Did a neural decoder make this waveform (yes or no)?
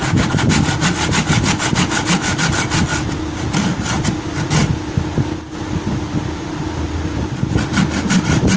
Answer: no